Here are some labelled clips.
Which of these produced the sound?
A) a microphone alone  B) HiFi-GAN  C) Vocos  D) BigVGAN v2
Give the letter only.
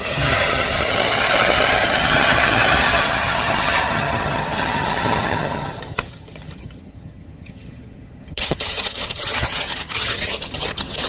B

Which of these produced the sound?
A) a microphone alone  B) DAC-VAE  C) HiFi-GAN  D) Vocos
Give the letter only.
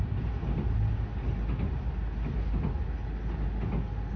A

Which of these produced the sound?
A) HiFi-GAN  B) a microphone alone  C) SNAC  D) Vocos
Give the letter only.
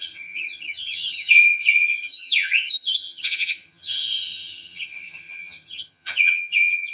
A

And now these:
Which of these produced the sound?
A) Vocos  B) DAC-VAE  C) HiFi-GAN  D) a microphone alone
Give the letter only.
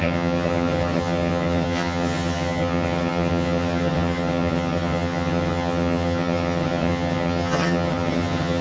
C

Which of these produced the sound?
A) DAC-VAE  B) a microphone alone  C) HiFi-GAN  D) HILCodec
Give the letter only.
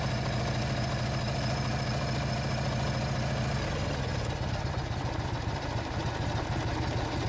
B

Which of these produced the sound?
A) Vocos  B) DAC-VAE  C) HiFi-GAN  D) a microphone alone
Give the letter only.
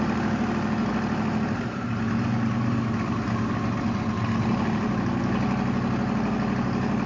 D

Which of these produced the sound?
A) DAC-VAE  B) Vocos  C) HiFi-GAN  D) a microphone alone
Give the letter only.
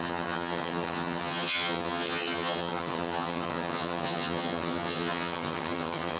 C